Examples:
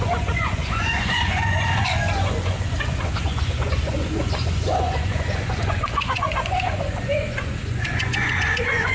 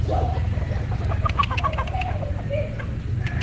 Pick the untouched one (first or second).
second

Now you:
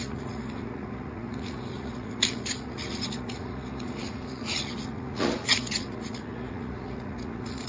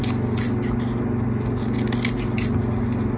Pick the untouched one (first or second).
second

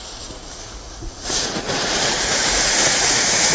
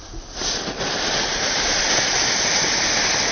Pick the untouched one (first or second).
second